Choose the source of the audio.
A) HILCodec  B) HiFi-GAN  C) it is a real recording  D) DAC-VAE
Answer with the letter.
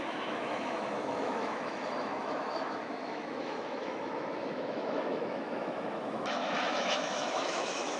D